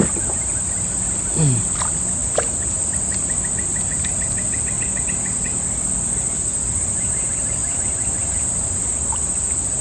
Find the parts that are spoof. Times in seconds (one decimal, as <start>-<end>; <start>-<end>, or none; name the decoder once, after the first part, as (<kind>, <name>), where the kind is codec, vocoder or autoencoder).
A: 7.6-8.9 (vocoder, BigVGAN v2)